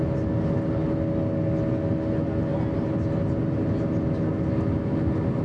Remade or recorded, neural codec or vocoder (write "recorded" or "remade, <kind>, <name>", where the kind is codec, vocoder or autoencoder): recorded